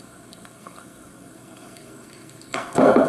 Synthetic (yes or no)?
yes